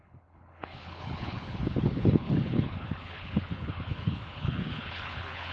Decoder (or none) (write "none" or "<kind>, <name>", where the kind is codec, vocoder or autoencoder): codec, HILCodec